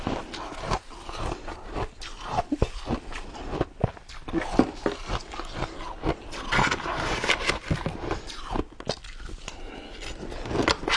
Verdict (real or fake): real